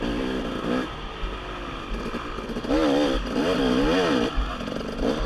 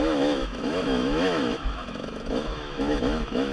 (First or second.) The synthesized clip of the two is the second